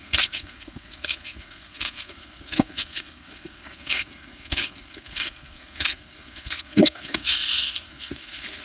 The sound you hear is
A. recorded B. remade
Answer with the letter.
B